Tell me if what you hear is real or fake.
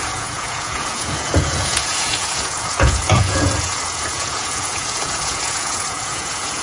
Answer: fake